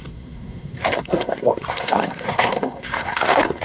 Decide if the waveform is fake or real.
fake